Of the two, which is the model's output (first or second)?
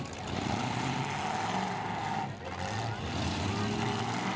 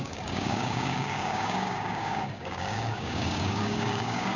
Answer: second